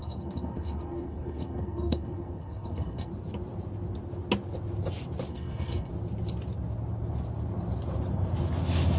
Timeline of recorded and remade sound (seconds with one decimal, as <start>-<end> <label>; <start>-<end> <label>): 0.0-3.1 remade; 3.1-5.3 recorded; 5.3-5.9 remade; 5.9-9.0 recorded